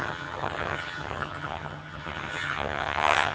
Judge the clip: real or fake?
fake